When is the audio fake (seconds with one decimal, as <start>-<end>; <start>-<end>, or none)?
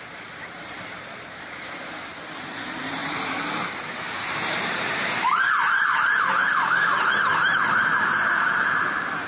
0.0-7.3; 8.4-9.3